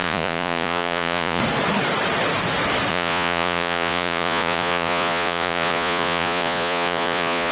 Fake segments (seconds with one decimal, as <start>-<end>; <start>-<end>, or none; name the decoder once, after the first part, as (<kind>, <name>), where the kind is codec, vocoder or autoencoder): 0.0-1.4 (vocoder, Vocos); 2.9-7.5